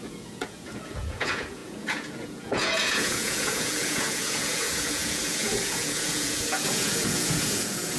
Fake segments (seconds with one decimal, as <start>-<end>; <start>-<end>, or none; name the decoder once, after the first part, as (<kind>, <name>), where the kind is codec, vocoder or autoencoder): 0.0-8.0 (vocoder, Vocos)